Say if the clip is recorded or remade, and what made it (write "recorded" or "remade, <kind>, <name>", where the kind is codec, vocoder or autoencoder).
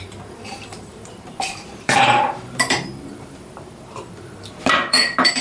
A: remade, vocoder, BigVGAN v2